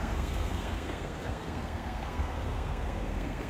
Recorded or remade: remade